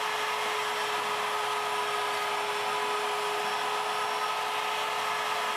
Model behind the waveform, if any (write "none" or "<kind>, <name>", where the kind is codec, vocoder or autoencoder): none